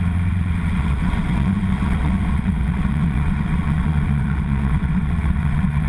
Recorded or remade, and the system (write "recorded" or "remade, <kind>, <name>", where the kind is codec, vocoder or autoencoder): remade, vocoder, WaveNeXt